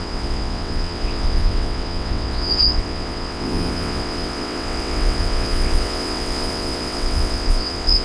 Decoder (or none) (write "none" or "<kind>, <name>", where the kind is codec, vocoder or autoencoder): vocoder, WaveNeXt